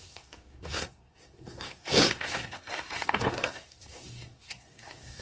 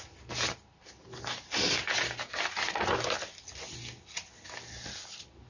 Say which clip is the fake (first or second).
first